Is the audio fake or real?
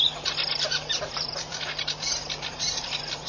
fake